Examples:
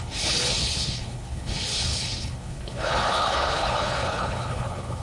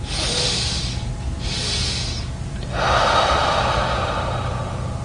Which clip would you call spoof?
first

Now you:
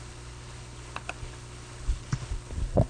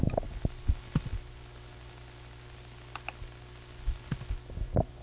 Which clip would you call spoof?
first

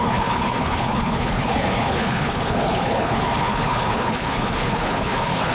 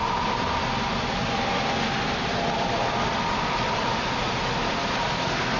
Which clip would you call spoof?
first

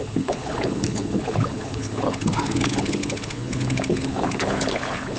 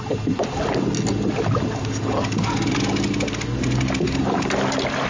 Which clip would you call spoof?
first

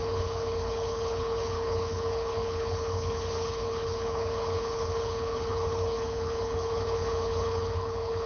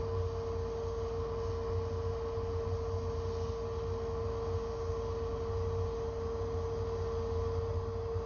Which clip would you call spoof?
first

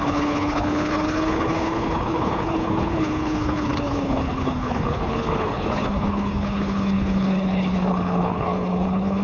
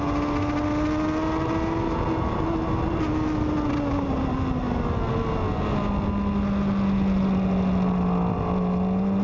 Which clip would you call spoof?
first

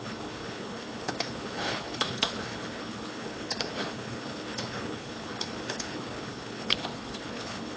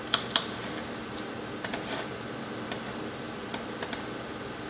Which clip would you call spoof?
first